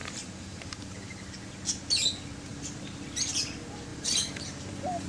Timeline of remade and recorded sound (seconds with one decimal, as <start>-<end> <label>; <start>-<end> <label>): 0.0-1.3 remade; 1.3-2.5 recorded; 2.5-3.3 remade; 3.3-3.9 recorded; 3.9-5.1 remade

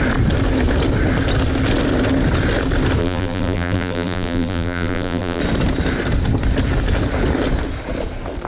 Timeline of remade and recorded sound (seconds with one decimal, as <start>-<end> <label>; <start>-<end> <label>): 0.0-3.0 recorded; 3.0-5.4 remade; 5.4-8.5 recorded

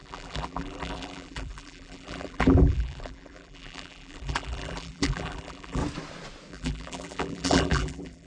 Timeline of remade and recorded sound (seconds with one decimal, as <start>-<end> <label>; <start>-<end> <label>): 0.0-5.8 remade; 5.8-6.5 recorded; 6.5-8.3 remade

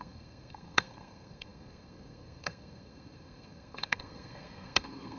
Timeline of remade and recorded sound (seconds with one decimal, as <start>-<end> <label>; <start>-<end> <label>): 0.0-5.2 remade